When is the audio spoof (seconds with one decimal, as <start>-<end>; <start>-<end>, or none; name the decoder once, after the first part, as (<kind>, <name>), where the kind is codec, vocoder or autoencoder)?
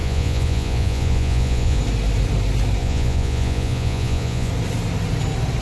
0.0-1.8 (vocoder, Vocos); 2.8-4.5